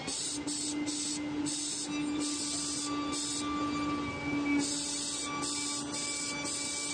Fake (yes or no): no